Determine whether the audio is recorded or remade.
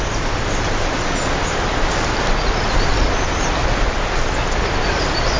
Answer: recorded